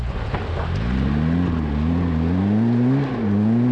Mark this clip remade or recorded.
recorded